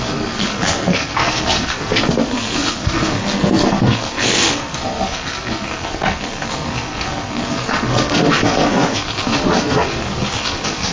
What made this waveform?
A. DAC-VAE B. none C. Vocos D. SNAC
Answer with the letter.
D